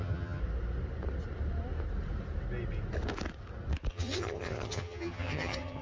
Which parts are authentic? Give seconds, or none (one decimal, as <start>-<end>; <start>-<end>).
0.4-3.9